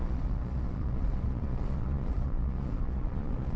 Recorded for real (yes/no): no